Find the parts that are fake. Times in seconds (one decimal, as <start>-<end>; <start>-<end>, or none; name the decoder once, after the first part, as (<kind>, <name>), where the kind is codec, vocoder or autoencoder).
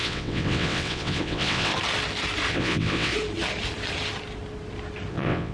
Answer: 0.0-1.7 (vocoder, WaveNeXt); 2.5-3.1; 5.1-5.5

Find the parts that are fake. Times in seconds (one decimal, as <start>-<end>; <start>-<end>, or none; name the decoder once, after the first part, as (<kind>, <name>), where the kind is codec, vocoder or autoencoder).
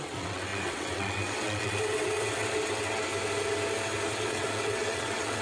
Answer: 0.0-3.1 (vocoder, WaveNeXt); 4.1-5.4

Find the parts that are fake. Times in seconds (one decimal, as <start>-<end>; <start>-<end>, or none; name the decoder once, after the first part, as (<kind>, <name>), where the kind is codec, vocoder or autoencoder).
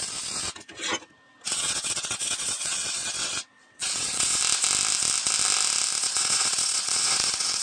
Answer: 1.5-4.4 (vocoder, WaveNeXt); 6.0-7.6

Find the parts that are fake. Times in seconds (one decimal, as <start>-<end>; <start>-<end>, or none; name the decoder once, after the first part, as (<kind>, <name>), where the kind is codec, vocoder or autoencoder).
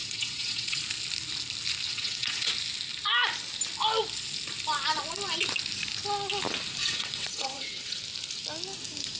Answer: 0.0-0.8 (vocoder, WaveNeXt); 1.9-2.5; 6.8-8.0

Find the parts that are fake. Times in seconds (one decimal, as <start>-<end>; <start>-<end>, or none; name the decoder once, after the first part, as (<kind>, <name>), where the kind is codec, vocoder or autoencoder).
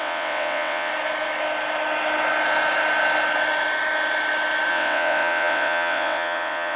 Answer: 0.0-0.9 (vocoder, WaveNeXt); 4.7-6.8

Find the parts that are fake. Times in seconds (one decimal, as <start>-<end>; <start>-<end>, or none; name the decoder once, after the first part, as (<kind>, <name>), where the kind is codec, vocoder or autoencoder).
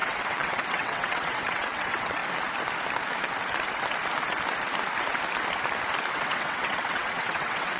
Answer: 0.0-2.2 (vocoder, WaveNeXt); 6.1-7.8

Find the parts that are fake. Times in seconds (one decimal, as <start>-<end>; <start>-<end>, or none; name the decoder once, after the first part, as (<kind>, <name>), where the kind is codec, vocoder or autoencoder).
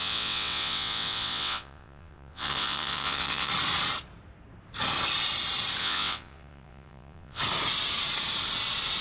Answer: 0.0-3.5 (vocoder, WaveNeXt); 5.8-7.4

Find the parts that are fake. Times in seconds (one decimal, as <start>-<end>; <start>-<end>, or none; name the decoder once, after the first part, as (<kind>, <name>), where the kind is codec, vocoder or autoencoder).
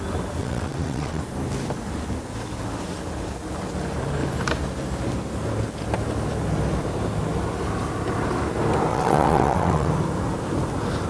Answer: 0.4-1.2 (vocoder, WaveNeXt); 8.9-9.9